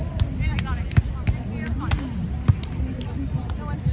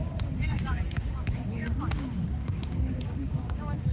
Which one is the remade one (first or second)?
second